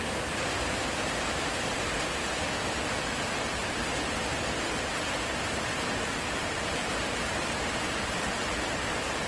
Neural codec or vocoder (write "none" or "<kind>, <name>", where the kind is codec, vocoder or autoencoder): vocoder, BigVGAN v2